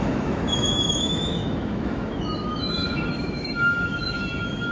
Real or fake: fake